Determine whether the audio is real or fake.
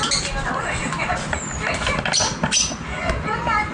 real